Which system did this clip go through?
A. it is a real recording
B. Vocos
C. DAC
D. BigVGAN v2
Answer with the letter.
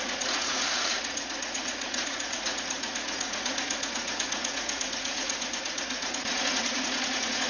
B